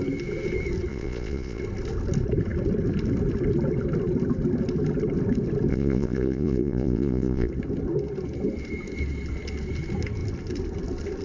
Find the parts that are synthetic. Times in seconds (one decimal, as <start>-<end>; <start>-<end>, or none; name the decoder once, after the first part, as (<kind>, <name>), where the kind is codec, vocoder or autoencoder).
0.9-1.6 (vocoder, Vocos); 5.7-7.5